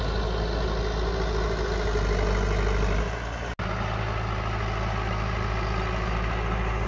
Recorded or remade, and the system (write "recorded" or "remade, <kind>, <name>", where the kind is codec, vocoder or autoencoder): recorded